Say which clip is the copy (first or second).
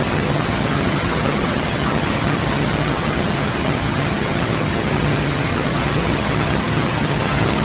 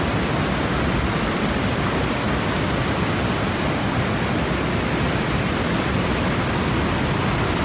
first